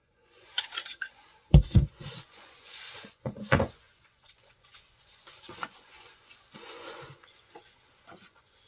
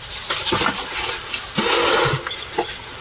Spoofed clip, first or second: first